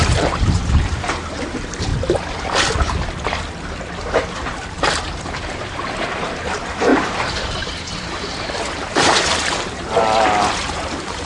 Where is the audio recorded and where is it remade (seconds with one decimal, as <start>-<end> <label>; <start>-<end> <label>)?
0.0-1.9 remade; 1.9-4.3 recorded; 4.3-11.3 remade